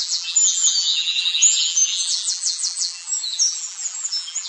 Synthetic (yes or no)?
yes